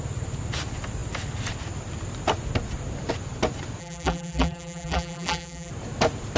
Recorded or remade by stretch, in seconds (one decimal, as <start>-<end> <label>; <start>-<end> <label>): 0.0-3.8 recorded; 3.8-5.7 remade; 5.7-6.4 recorded